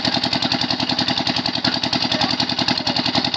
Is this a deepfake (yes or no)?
no